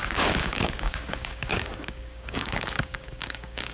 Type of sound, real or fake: fake